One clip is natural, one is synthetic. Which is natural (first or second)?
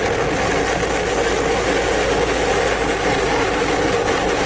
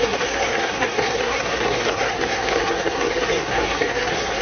first